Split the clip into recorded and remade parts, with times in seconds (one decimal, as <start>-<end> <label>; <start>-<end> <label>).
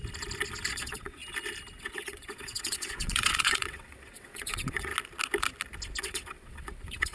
0.0-0.7 recorded; 0.7-1.2 remade; 1.2-1.8 recorded; 1.8-4.9 remade; 4.9-6.0 recorded; 6.0-7.1 remade